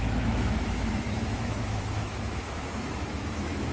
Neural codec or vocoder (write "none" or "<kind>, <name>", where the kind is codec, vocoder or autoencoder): autoencoder, DAC-VAE